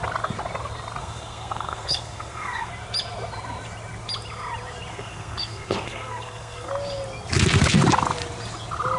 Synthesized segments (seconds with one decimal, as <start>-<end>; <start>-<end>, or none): 1.0-2.7; 4.9-6.7